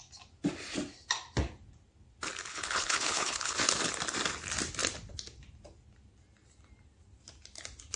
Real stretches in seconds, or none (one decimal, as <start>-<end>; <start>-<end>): 0.0-2.5; 3.5-8.0